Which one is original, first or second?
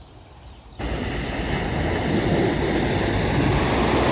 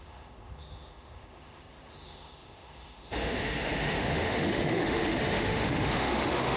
first